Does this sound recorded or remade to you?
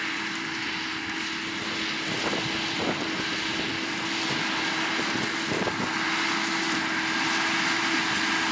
recorded